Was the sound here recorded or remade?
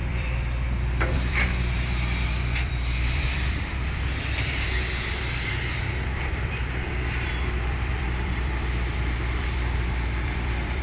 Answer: remade